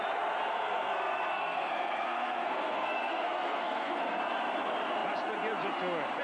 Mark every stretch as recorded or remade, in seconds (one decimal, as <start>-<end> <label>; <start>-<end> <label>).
0.0-0.5 recorded; 0.5-4.2 remade; 4.2-6.2 recorded